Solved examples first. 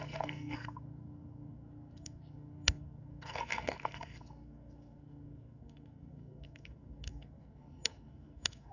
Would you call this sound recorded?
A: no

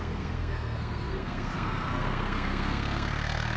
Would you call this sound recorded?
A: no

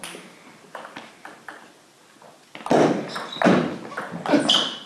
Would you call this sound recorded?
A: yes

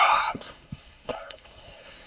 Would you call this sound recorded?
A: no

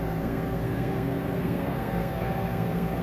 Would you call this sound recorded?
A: no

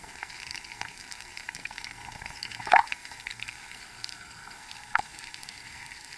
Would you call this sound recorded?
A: no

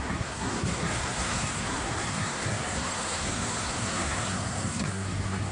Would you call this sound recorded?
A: no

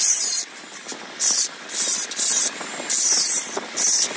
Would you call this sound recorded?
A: yes